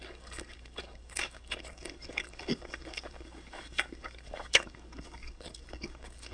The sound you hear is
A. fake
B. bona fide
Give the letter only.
A